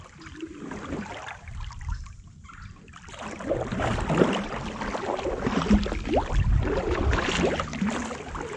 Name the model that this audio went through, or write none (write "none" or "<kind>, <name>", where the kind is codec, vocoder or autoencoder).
none